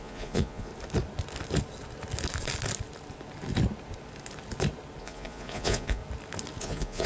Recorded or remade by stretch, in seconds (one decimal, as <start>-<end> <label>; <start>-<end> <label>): 0.0-0.7 remade; 0.7-5.0 recorded; 5.0-6.0 remade; 6.0-6.6 recorded; 6.6-7.1 remade